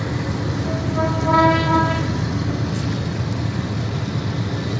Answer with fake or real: real